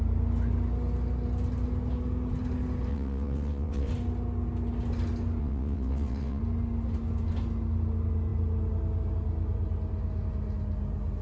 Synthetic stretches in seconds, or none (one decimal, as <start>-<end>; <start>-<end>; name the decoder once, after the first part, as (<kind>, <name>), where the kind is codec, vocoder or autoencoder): 2.9-3.9 (vocoder, WaveNeXt); 5.4-6.4